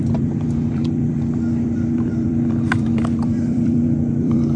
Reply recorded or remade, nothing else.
remade